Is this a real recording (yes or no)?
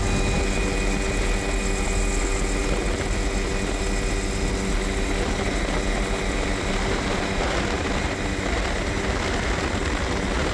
yes